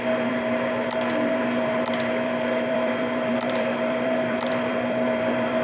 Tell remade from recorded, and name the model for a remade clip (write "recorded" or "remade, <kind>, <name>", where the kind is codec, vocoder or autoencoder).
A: remade, vocoder, BigVGAN v2